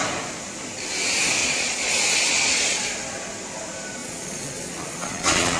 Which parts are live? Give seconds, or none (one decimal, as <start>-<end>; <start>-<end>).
0.0-1.4; 1.9-2.3; 2.8-4.0